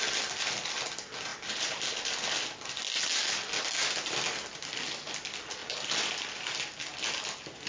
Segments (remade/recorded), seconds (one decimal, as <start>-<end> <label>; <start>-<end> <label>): 0.0-7.7 recorded